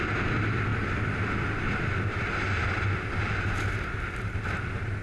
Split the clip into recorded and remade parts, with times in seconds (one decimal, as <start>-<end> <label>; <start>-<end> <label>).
0.0-5.0 recorded